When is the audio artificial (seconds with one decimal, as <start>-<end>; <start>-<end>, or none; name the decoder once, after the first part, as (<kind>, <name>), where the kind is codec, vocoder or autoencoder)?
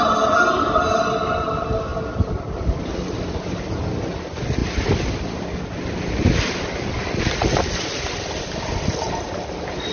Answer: none